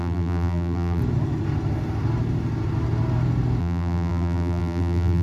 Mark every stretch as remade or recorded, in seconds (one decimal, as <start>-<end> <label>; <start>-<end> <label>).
0.0-1.0 remade; 1.0-3.6 recorded; 3.6-5.2 remade